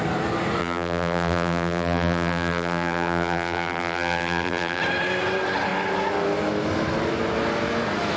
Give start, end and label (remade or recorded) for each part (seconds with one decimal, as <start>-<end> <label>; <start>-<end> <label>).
0.0-0.6 recorded; 0.6-4.8 remade; 4.8-8.2 recorded